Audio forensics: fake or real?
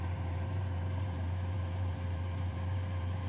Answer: fake